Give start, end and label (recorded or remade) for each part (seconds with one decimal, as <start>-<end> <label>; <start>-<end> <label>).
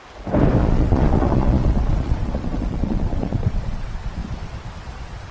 0.0-0.6 recorded; 0.6-3.8 remade; 3.8-5.3 recorded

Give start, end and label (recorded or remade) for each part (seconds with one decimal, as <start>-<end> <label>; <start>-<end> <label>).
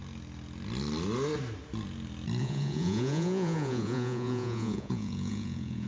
0.0-2.4 recorded; 2.4-5.9 remade